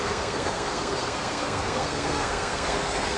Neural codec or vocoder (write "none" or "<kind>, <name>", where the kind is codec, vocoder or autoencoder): codec, SNAC